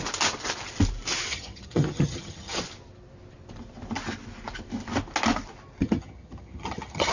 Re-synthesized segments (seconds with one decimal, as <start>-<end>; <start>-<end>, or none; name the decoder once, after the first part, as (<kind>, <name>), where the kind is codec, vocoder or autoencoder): 1.3-2.6 (vocoder, HiFi-GAN); 5.8-7.1